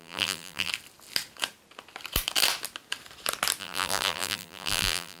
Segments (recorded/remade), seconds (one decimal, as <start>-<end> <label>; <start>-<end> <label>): 0.0-0.7 remade; 0.7-3.6 recorded; 3.6-5.2 remade